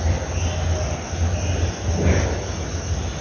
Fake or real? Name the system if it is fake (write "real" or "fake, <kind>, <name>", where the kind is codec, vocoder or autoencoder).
real